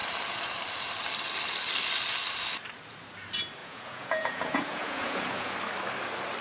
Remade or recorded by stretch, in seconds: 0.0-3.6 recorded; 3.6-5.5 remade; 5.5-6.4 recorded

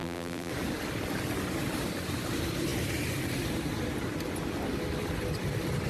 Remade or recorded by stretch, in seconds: 0.0-0.5 remade; 0.5-5.9 recorded

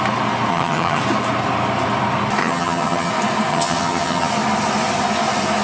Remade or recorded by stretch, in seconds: 0.0-0.5 recorded; 0.5-1.0 remade; 1.0-2.4 recorded; 2.4-3.1 remade; 3.1-3.5 recorded; 3.5-4.3 remade; 4.3-5.6 recorded

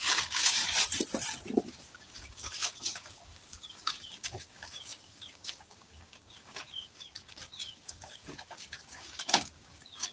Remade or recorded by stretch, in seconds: 0.0-0.6 remade; 0.6-1.6 recorded; 1.6-10.1 remade

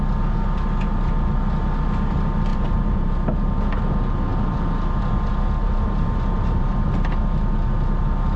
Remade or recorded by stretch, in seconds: 0.0-2.5 recorded; 2.5-3.1 remade; 3.1-5.6 recorded; 5.6-6.8 remade; 6.8-8.4 recorded

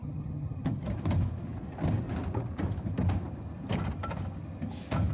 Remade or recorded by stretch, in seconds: 0.0-0.9 remade; 0.9-5.1 recorded

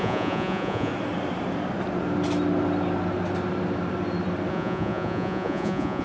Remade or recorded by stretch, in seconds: 0.0-0.9 remade; 0.9-4.5 recorded; 4.5-6.0 remade